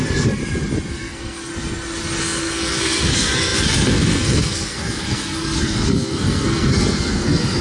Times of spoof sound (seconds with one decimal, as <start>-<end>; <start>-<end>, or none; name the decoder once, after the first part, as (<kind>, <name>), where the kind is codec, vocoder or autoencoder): 0.0-0.4 (codec, SNAC); 0.9-1.5; 2.2-7.6